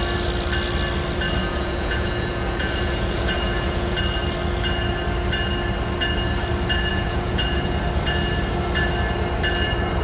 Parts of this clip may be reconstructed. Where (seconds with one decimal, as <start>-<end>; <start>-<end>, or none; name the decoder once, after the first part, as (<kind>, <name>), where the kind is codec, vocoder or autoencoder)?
1.4-4.0 (vocoder, Vocos); 6.9-7.8